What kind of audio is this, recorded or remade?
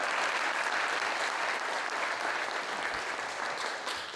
recorded